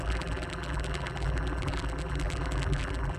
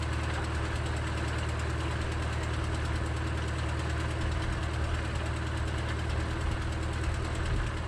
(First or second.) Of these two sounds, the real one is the second